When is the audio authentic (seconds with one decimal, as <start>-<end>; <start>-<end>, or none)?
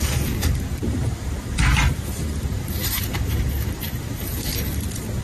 4.5-5.2